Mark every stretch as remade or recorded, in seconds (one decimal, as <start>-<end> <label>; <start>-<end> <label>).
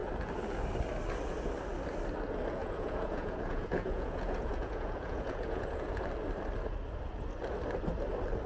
0.0-2.6 recorded; 2.6-6.0 remade; 6.0-8.5 recorded